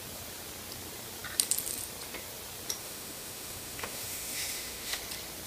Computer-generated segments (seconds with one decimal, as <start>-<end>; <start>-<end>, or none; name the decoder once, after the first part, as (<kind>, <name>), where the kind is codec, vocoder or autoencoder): 2.8-5.0 (autoencoder, DAC-VAE)